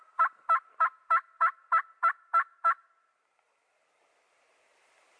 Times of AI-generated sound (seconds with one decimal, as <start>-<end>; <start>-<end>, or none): none